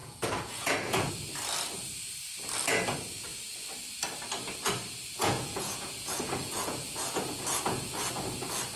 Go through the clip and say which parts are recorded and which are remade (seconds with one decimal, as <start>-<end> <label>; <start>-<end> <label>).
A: 0.0-1.1 remade; 1.1-5.2 recorded; 5.2-8.1 remade; 8.1-8.8 recorded